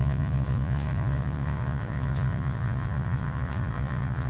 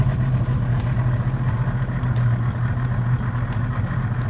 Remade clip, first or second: first